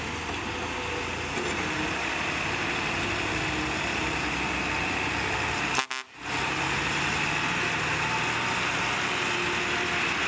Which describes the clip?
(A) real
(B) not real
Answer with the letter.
A